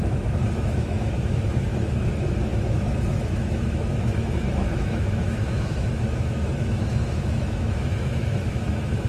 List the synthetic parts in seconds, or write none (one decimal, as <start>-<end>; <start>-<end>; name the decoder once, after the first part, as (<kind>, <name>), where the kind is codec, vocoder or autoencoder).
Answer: 0.0-9.1 (autoencoder, DAC-VAE)